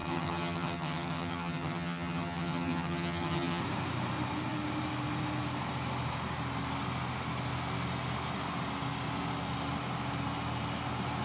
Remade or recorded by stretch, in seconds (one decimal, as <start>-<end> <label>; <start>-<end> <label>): 0.0-3.6 remade; 3.6-11.2 recorded